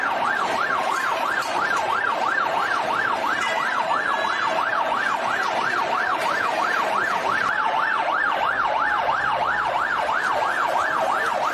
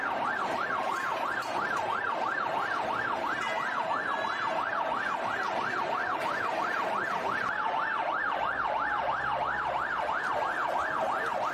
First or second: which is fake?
first